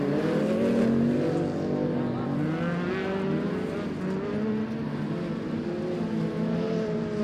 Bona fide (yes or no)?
yes